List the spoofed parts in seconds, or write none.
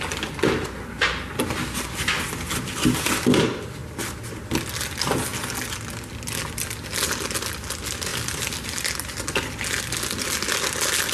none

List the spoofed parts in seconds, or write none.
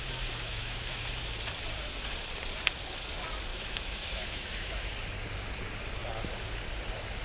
0.4-1.0 (autoencoder, DAC-VAE); 3.5-4.9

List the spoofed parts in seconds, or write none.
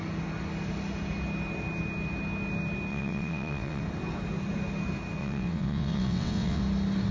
2.9-3.8 (vocoder, WaveNeXt); 5.2-6.6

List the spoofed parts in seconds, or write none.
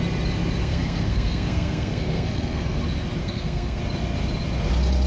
0.6-2.8 (codec, SNAC); 3.2-3.8